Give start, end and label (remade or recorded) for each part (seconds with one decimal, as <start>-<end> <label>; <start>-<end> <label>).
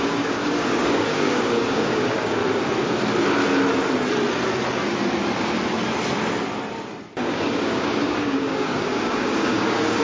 0.0-2.4 remade; 2.4-7.2 recorded; 7.2-10.0 remade